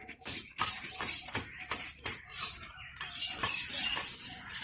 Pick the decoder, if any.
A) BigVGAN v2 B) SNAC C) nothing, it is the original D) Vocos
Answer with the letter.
A